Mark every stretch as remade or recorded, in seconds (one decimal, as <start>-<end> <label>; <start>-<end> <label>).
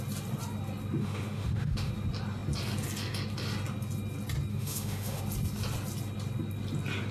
0.0-1.0 recorded; 1.0-1.9 remade; 1.9-4.5 recorded; 4.5-5.2 remade; 5.2-7.1 recorded